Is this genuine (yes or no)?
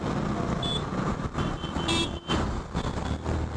yes